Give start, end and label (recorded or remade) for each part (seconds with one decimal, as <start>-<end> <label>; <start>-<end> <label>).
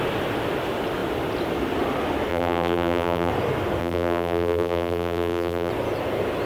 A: 0.0-2.3 recorded; 2.3-3.3 remade; 3.3-3.8 recorded; 3.8-5.7 remade; 5.7-6.5 recorded